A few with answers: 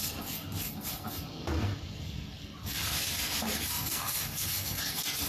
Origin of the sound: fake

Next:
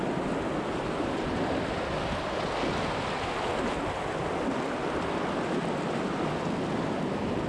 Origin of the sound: real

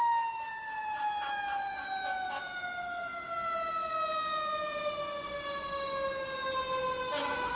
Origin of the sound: real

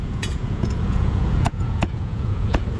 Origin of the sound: fake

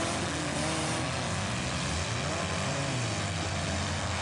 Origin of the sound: real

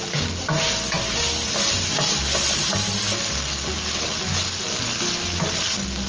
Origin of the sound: real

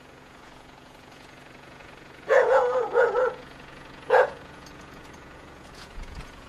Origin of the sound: fake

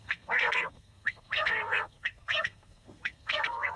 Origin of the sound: fake